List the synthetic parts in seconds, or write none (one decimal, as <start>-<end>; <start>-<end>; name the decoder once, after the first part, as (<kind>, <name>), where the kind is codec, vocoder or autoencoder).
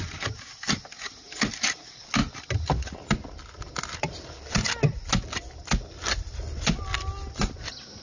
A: none